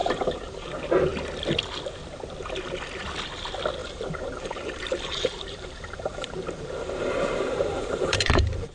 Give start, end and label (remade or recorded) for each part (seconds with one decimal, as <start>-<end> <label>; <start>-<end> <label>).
0.0-0.7 remade; 0.7-3.8 recorded; 3.8-8.7 remade